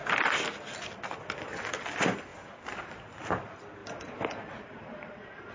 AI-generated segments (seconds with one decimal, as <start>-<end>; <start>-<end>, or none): 2.3-2.8; 3.8-5.5